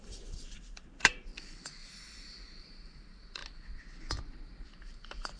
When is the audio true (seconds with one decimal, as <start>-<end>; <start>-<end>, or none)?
1.3-2.6; 3.4-4.2